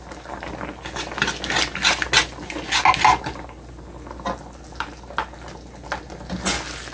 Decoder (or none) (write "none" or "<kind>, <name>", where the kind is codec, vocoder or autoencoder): none